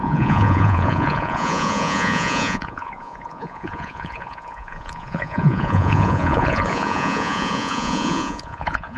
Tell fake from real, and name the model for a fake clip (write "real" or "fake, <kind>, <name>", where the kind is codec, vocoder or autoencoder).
fake, vocoder, Vocos